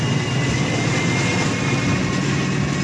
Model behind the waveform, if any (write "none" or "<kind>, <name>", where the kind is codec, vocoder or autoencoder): none